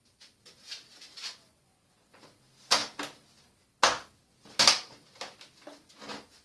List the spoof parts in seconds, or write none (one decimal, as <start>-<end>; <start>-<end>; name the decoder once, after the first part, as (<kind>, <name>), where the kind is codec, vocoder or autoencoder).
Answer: 1.2-2.2 (vocoder, Vocos)